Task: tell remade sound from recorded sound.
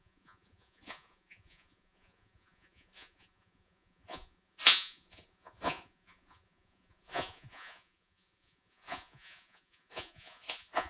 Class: remade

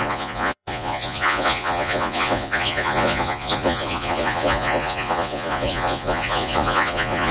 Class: remade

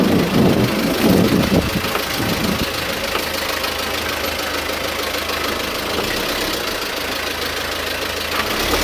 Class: recorded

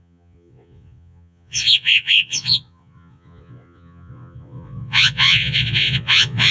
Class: remade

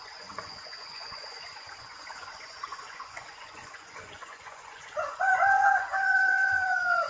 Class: remade